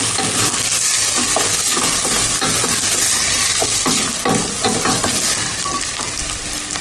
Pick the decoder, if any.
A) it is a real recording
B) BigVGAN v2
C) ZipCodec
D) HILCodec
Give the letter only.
A